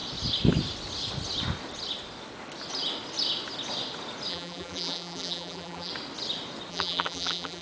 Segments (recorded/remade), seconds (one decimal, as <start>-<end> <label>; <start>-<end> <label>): 0.0-4.3 recorded; 4.3-5.9 remade; 5.9-6.7 recorded; 6.7-7.6 remade